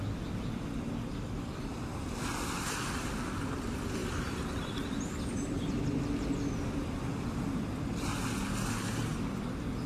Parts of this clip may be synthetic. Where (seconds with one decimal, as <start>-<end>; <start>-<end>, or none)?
1.1-1.7; 4.0-5.7; 7.1-8.1